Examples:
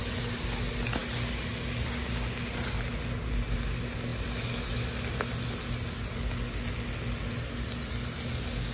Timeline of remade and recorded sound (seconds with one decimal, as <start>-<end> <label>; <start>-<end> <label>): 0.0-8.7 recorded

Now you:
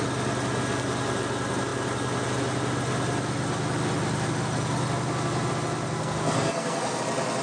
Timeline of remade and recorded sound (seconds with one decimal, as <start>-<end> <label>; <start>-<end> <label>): 0.0-6.0 recorded; 6.0-7.0 remade; 7.0-7.4 recorded

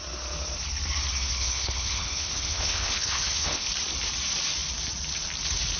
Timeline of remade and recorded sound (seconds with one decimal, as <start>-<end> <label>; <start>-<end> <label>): 0.0-1.2 recorded; 1.2-3.7 remade; 3.7-5.8 recorded